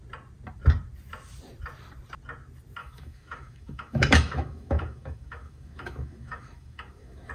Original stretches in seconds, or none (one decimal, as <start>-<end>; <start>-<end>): 0.0-2.8